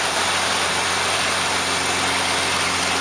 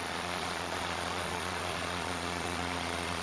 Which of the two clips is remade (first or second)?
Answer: second